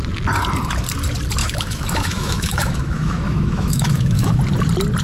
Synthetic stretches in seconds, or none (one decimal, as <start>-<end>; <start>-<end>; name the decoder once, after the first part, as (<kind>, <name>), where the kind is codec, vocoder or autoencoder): 1.4-4.4 (autoencoder, DAC-VAE)